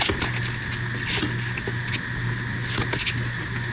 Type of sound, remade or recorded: recorded